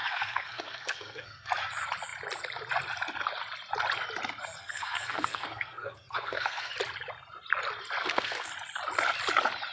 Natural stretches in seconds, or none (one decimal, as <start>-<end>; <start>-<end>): 1.5-4.6; 6.7-8.0; 8.5-9.7